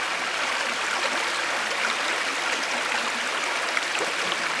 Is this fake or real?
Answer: real